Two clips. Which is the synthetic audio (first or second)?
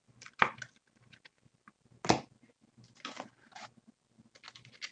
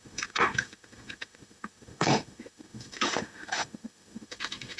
second